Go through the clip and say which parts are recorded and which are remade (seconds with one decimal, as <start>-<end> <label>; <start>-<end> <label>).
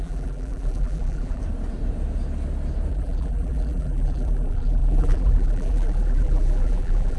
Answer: 0.0-1.4 remade; 1.4-2.9 recorded; 2.9-7.2 remade